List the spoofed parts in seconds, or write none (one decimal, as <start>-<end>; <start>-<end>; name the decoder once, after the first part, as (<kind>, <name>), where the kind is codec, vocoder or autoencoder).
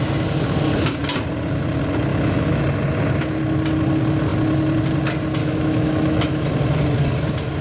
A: 2.1-2.6 (autoencoder, DAC-VAE); 5.4-6.5